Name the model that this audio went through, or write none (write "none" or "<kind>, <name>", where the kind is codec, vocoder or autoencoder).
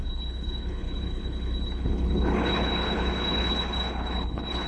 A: codec, HILCodec